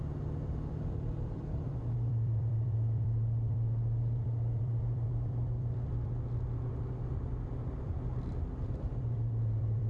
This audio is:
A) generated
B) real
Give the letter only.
A